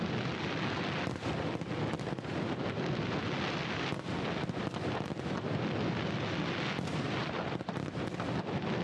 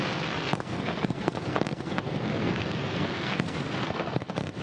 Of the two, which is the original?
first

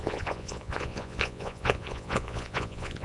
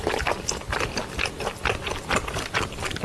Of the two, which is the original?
second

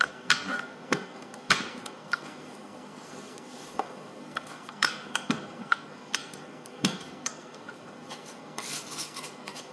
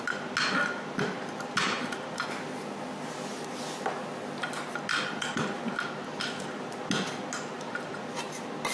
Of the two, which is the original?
second